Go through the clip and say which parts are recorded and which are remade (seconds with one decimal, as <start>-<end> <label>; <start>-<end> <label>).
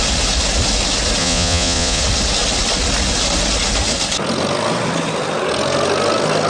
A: 0.0-1.2 recorded; 1.2-2.0 remade; 2.0-6.5 recorded